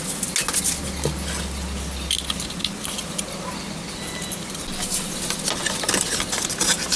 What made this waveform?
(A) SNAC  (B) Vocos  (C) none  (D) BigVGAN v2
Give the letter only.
C